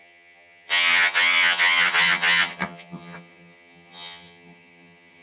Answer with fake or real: fake